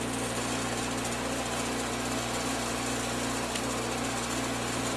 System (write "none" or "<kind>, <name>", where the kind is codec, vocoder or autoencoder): none